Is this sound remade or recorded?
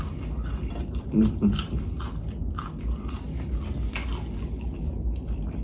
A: recorded